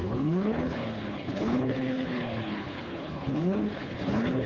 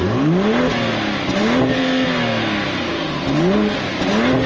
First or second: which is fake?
first